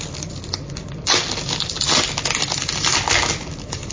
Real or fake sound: real